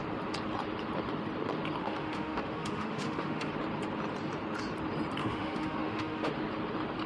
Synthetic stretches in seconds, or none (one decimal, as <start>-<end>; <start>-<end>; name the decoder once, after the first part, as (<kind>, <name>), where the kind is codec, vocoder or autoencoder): 1.8-3.5 (autoencoder, DAC-VAE); 5.2-6.3